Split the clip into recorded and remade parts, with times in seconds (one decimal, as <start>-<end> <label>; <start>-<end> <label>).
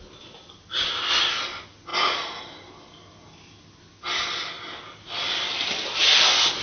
0.0-6.6 recorded